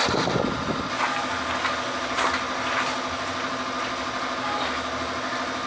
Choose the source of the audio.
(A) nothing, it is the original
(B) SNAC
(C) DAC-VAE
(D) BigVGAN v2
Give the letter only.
A